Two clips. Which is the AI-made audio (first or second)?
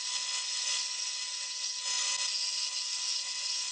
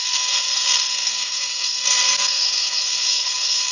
second